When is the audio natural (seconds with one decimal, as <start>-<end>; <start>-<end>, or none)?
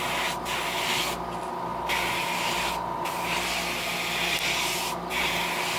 0.0-5.8